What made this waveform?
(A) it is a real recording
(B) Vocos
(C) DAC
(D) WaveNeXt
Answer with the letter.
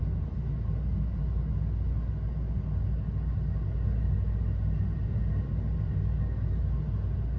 A